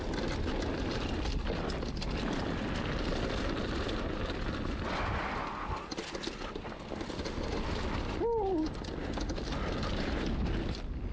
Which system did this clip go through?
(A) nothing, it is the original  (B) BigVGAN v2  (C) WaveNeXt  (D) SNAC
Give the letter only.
A